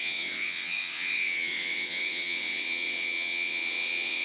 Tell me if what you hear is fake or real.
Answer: fake